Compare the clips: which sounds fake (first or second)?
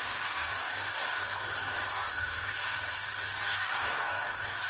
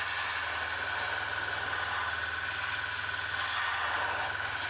first